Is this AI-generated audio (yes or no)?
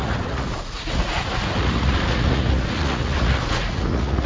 yes